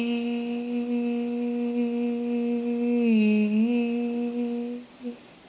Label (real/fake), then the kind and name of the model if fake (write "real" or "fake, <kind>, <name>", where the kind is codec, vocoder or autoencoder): real